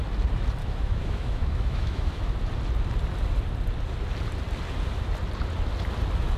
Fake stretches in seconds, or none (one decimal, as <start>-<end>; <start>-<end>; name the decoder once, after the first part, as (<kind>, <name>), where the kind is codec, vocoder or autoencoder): 0.6-2.2 (autoencoder, DAC-VAE)